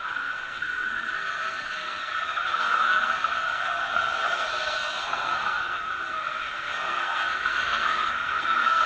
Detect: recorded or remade remade